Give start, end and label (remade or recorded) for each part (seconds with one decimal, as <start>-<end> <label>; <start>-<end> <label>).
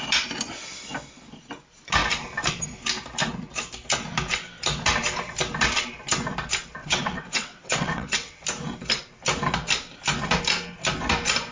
0.0-6.8 recorded; 6.8-8.3 remade; 8.3-11.5 recorded